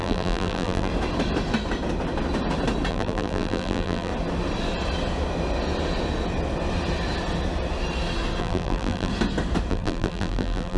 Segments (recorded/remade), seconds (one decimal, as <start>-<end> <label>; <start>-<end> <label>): 0.0-0.9 remade; 0.9-2.9 recorded; 2.9-4.1 remade; 4.1-8.4 recorded; 8.4-9.1 remade; 9.1-9.7 recorded; 9.7-10.8 remade